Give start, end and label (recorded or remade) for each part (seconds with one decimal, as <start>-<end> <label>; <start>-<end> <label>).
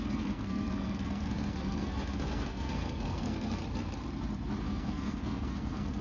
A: 0.0-3.6 remade; 3.6-4.6 recorded; 4.6-6.0 remade